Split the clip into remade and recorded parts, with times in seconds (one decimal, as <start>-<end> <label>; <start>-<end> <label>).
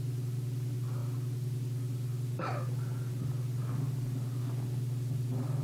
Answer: 0.0-5.6 recorded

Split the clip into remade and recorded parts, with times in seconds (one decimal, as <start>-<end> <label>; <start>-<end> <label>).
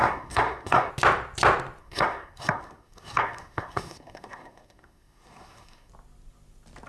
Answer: 0.0-0.9 remade; 0.9-1.8 recorded; 1.8-5.9 remade; 5.9-6.9 recorded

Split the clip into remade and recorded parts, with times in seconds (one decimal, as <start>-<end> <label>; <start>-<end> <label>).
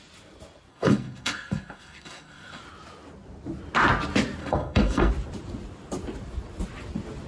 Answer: 0.0-0.7 recorded; 0.7-2.6 remade; 2.6-4.4 recorded; 4.4-5.1 remade; 5.1-7.3 recorded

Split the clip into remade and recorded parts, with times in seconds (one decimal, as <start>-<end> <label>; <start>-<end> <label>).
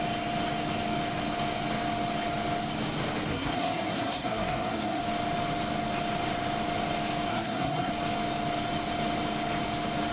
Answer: 0.0-3.3 recorded; 3.3-5.0 remade; 5.0-7.3 recorded; 7.3-7.9 remade; 7.9-10.1 recorded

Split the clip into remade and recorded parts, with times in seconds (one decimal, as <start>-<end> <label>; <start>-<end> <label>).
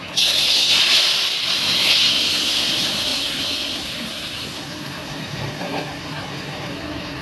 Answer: 0.0-0.8 remade; 0.8-1.4 recorded; 1.4-7.2 remade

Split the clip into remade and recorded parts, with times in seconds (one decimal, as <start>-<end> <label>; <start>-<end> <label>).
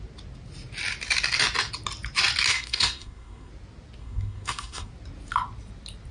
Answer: 0.0-2.5 recorded; 2.5-3.5 remade; 3.5-4.0 recorded; 4.0-4.9 remade; 4.9-6.1 recorded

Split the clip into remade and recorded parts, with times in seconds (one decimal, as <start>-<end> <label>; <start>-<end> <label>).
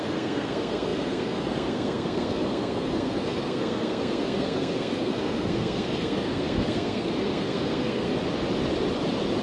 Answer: 0.0-8.1 remade; 8.1-9.4 recorded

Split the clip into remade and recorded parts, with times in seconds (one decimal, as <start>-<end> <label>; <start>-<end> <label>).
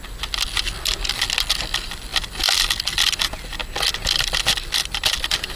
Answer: 0.0-5.6 recorded